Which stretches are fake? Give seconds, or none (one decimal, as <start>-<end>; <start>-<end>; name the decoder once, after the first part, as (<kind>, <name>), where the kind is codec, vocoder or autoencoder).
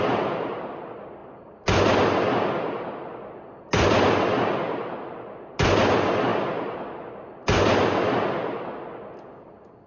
none